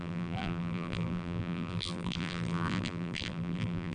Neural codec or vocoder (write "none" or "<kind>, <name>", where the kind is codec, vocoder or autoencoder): vocoder, BigVGAN v2